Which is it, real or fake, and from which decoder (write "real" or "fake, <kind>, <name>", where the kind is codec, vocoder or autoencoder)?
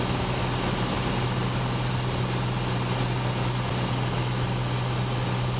real